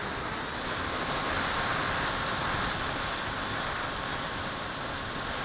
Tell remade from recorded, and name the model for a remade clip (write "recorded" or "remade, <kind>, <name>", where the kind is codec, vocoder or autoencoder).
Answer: recorded